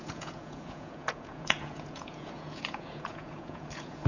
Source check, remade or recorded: remade